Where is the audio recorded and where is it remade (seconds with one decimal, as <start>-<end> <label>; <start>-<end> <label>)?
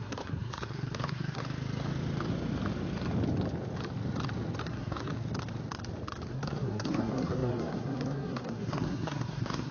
0.0-1.4 remade; 1.4-4.6 recorded; 4.6-5.1 remade; 5.1-6.3 recorded; 6.3-9.7 remade